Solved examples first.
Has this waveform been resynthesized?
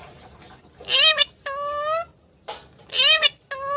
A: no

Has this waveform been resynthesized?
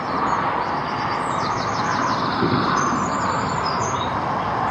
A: no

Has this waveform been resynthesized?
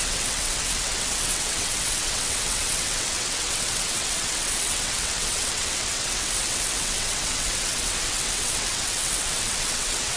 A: yes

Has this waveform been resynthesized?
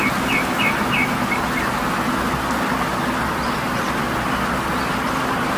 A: no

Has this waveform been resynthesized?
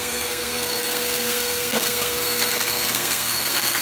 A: yes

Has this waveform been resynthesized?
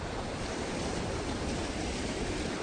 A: yes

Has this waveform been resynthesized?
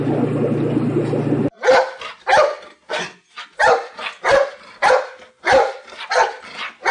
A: no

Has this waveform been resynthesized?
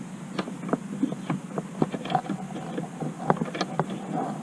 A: no